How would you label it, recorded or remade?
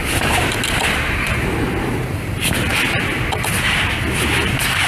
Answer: recorded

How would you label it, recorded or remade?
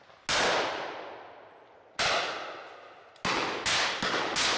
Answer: recorded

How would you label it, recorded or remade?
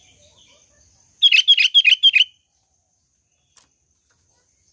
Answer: recorded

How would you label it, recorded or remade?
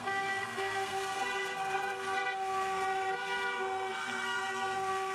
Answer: remade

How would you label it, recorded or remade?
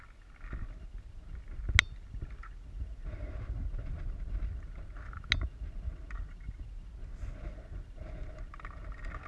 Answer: recorded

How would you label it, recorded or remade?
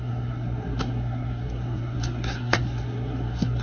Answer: remade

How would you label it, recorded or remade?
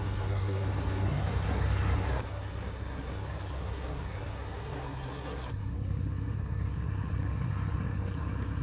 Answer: remade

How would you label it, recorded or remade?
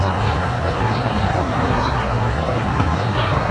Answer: remade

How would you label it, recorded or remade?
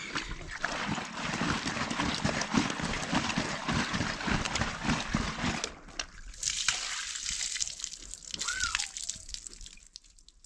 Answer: recorded